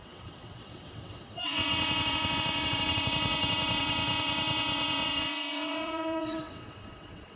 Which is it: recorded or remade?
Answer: remade